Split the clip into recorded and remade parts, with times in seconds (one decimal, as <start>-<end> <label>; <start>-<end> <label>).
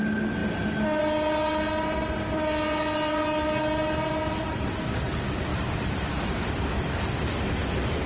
0.0-8.1 recorded